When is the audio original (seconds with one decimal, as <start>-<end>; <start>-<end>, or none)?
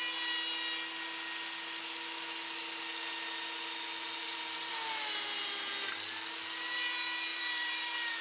0.0-4.2; 5.7-7.3